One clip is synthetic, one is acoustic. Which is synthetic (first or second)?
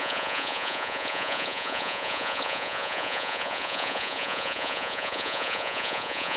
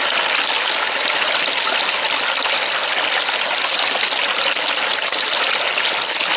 first